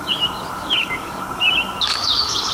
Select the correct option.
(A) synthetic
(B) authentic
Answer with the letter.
A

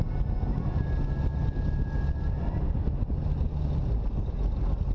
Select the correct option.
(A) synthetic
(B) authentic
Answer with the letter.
B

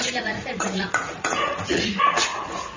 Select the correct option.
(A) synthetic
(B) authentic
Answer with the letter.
A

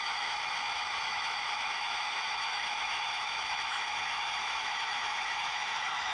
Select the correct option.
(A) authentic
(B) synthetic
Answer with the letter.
B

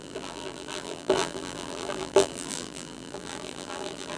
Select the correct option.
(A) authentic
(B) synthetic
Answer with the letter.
B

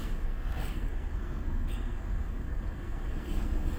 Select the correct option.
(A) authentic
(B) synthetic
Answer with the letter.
B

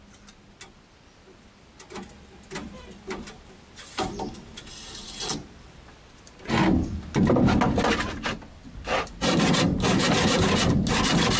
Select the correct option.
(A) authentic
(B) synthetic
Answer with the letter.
A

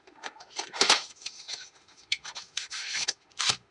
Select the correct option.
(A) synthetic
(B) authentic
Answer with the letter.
A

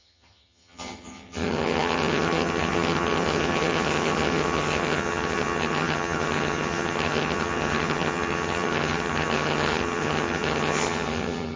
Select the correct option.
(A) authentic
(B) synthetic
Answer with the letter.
B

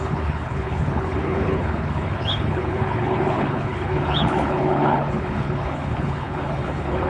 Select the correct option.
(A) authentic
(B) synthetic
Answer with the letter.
B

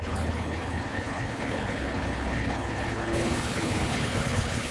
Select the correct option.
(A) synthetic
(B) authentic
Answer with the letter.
A